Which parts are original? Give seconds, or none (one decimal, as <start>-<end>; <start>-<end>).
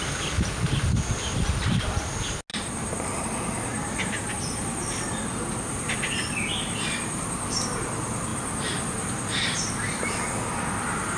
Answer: 0.0-2.5; 3.2-3.7; 5.0-11.2